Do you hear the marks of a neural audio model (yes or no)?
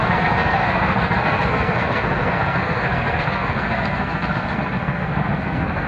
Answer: yes